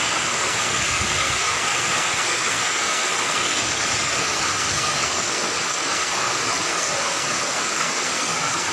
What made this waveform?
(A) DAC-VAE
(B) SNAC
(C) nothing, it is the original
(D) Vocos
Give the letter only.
B